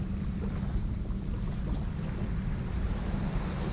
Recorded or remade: recorded